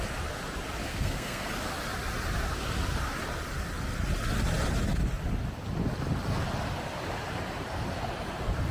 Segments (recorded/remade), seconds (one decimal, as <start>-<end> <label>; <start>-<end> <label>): 0.0-0.9 recorded; 0.9-1.5 remade; 1.5-8.7 recorded